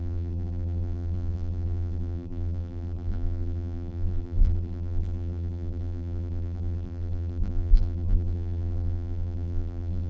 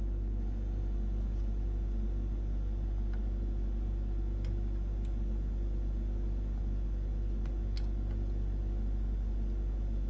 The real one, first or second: second